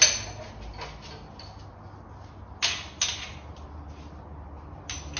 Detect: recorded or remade recorded